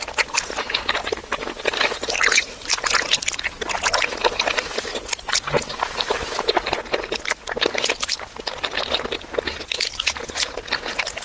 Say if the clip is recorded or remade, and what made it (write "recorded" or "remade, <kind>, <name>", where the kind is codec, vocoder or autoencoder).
recorded